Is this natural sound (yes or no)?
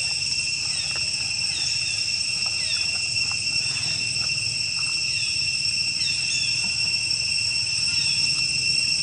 yes